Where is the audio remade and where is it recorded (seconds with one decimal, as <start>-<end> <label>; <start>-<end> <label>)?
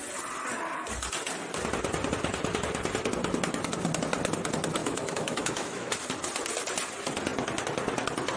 0.0-4.8 recorded; 4.8-5.9 remade; 5.9-8.4 recorded